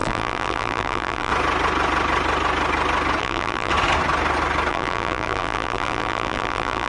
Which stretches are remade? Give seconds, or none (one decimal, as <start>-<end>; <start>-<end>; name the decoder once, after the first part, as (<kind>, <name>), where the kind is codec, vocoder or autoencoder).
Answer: 0.0-1.3 (vocoder, BigVGAN v2); 3.2-3.7; 4.7-6.9